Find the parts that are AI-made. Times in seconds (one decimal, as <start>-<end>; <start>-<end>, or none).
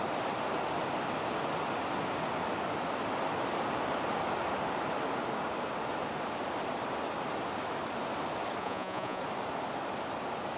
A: 8.6-9.2